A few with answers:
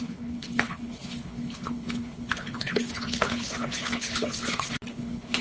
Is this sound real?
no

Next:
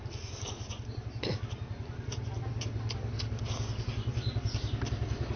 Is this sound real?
yes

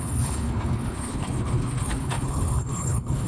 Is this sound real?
no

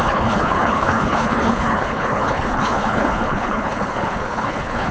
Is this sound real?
no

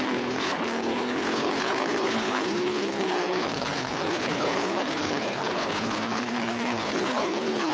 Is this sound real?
no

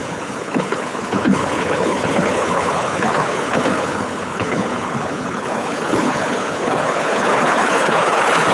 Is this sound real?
no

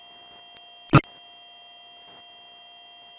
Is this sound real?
yes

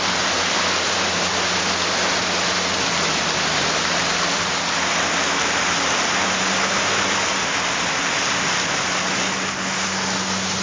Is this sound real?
yes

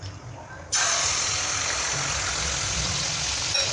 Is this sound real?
yes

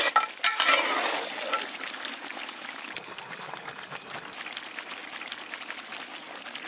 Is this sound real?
yes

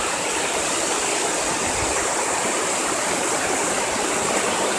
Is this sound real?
yes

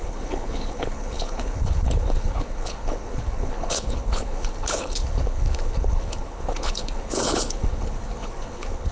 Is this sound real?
no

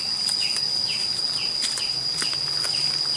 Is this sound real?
yes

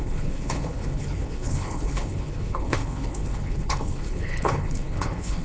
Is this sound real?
no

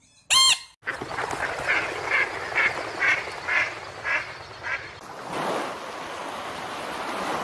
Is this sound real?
yes